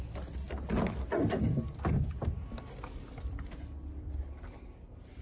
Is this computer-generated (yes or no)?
no